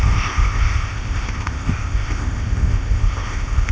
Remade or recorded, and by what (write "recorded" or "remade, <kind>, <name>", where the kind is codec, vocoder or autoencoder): remade, codec, ZipCodec